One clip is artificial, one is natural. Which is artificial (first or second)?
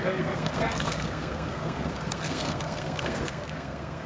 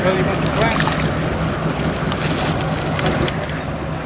first